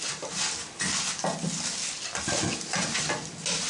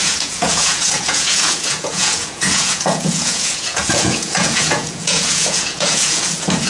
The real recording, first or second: first